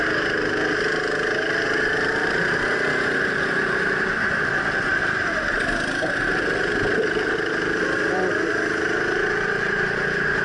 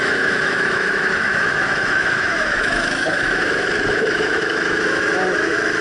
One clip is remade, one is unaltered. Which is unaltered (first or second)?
first